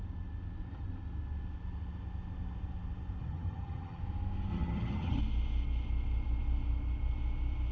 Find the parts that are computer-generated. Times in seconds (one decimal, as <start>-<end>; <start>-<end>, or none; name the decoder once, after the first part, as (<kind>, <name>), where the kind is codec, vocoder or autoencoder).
3.2-4.0 (vocoder, HiFi-GAN); 4.5-5.2